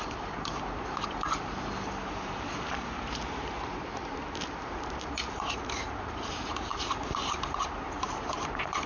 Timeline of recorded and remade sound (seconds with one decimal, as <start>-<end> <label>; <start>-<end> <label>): 0.0-8.9 remade

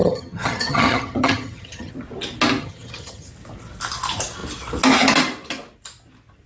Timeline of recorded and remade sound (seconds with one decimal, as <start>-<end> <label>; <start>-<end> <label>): 0.0-1.9 remade; 1.9-2.6 recorded; 2.6-3.3 remade; 3.3-6.5 recorded

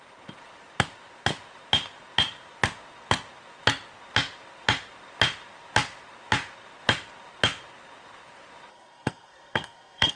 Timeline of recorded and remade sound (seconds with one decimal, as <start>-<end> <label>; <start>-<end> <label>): 0.0-8.7 recorded; 8.7-10.2 remade